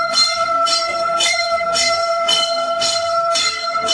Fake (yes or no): yes